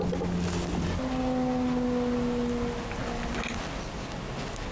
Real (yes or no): yes